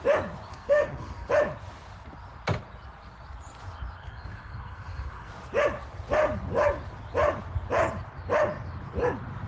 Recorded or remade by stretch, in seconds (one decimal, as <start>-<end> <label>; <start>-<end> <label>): 0.0-0.5 recorded; 0.5-1.3 remade; 1.3-4.0 recorded; 4.0-5.3 remade; 5.3-9.5 recorded